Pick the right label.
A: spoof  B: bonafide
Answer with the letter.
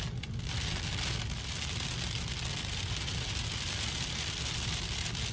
B